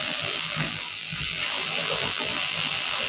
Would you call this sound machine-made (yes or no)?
yes